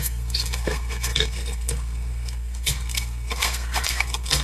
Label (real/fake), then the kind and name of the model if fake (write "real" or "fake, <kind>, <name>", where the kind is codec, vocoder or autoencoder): fake, codec, SNAC